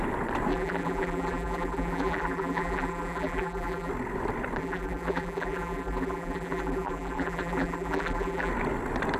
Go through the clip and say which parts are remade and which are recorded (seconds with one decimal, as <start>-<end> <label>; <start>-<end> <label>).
0.0-0.5 recorded; 0.5-3.9 remade; 3.9-4.6 recorded; 4.6-8.5 remade; 8.5-9.2 recorded